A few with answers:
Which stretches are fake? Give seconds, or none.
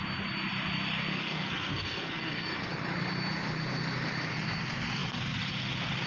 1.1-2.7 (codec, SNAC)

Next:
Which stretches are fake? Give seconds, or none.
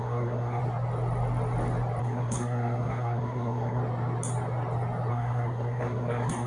0.0-0.6 (codec, SNAC); 2.0-3.8; 5.1-6.5